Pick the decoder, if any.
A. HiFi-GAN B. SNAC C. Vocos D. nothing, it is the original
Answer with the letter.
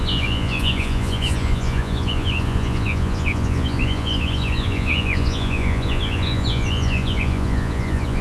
C